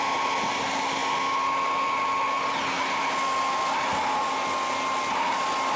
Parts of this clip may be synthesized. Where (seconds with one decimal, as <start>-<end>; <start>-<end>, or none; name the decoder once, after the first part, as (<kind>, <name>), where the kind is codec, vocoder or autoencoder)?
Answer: none